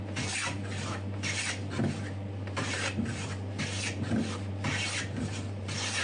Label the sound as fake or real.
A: fake